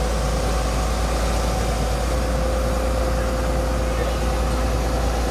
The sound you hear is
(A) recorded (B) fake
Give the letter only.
A